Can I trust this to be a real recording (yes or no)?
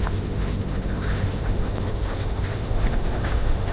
no